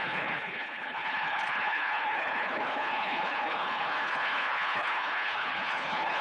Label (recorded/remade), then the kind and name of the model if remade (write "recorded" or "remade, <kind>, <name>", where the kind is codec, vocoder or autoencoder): remade, codec, HILCodec